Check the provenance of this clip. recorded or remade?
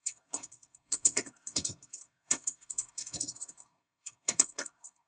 remade